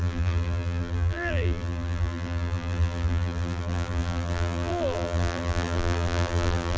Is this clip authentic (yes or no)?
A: no